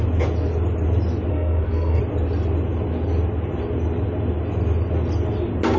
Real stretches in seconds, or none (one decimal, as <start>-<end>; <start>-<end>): 0.0-1.3; 2.0-5.8